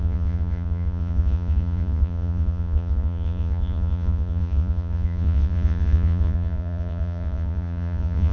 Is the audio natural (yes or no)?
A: no